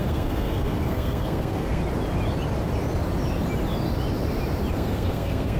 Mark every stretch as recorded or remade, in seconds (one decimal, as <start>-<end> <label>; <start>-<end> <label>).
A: 0.0-1.8 remade; 1.8-4.7 recorded; 4.7-5.6 remade